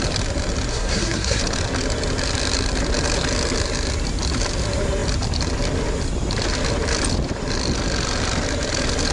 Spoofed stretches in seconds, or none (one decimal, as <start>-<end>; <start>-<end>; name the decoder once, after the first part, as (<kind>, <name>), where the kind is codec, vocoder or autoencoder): 0.7-1.4 (codec, SNAC)